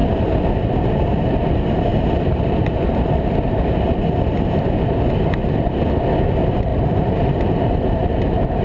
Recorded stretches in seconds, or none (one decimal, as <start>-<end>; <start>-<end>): 0.0-1.9; 2.9-6.7; 7.3-8.0